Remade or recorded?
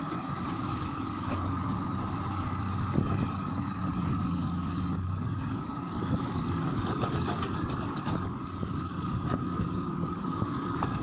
remade